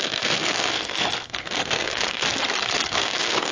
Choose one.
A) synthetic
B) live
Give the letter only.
A